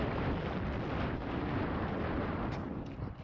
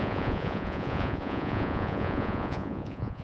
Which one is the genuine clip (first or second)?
first